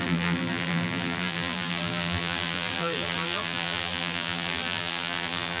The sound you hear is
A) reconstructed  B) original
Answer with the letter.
A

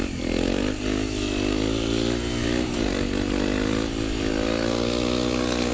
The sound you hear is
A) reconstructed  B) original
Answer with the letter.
B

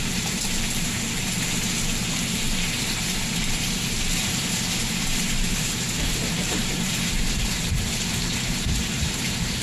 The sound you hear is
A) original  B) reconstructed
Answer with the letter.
B